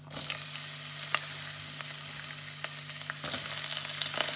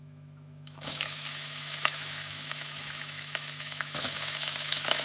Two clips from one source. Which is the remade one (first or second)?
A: second